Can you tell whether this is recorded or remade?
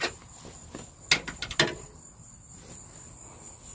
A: recorded